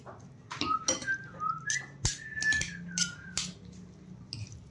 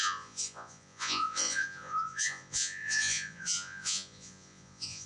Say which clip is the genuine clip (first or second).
first